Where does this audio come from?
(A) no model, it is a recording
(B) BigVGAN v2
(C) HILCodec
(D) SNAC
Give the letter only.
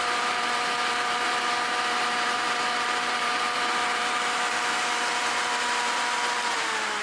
B